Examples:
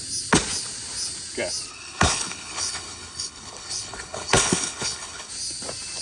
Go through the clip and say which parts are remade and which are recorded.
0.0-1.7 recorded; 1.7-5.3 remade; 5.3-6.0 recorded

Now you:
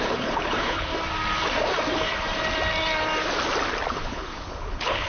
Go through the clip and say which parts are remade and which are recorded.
0.0-0.9 remade; 0.9-4.0 recorded; 4.0-5.1 remade